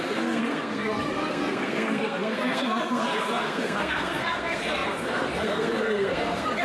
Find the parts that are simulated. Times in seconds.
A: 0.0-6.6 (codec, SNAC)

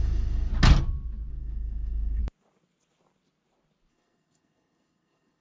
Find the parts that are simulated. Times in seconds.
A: 0.0-0.5 (codec, SNAC); 1.3-2.2; 3.9-5.4

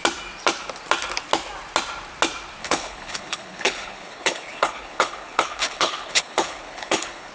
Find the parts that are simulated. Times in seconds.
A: 2.6-7.3 (codec, HILCodec)

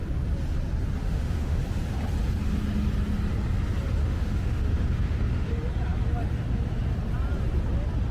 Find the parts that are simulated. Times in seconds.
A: 1.0-1.6 (autoencoder, DAC-VAE); 4.0-5.5

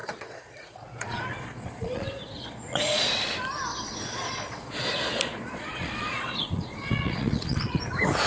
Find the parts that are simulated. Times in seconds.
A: 0.0-3.1 (vocoder, Vocos); 3.7-7.8

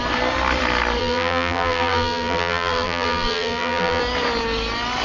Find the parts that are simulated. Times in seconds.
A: 1.0-4.0 (vocoder, BigVGAN v2)

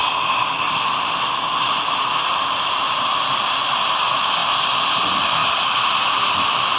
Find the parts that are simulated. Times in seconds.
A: 2.8-4.0 (vocoder, BigVGAN v2); 4.4-5.0

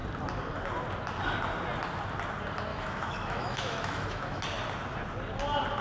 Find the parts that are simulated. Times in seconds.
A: 2.7-4.4 (autoencoder, DAC-VAE)